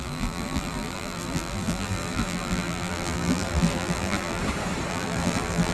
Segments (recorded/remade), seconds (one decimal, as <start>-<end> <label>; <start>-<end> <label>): 0.0-4.4 remade; 4.4-4.9 recorded; 4.9-5.7 remade